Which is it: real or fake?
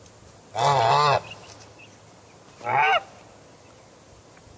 real